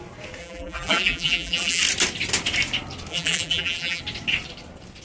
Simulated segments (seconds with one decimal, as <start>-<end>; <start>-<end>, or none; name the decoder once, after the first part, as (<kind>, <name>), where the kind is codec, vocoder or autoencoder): 0.4-1.8 (vocoder, BigVGAN v2); 3.1-4.0